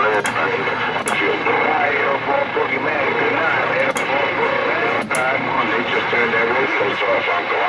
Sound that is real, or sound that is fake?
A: real